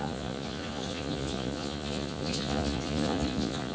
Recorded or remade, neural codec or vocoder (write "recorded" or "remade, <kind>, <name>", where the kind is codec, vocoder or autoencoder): remade, vocoder, Vocos